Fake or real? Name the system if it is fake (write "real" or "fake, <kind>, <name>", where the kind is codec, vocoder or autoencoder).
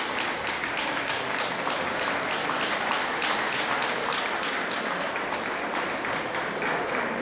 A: real